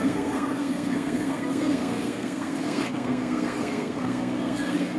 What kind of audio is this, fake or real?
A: fake